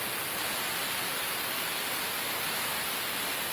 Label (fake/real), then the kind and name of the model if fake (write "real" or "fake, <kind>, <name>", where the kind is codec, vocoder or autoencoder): real